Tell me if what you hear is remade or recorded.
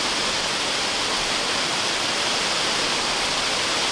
recorded